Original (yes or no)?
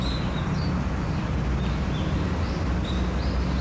yes